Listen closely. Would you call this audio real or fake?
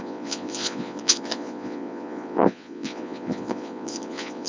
fake